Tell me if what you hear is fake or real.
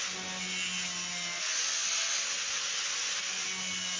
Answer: real